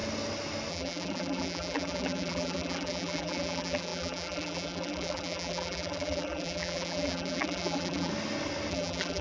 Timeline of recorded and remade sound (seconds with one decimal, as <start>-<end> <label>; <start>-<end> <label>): 0.0-0.7 recorded; 0.7-8.1 remade; 8.1-8.7 recorded; 8.7-9.2 remade